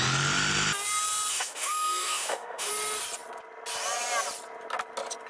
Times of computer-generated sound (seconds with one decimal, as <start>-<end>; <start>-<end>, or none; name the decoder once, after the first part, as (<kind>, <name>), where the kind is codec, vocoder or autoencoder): 1.3-2.7 (autoencoder, DAC-VAE)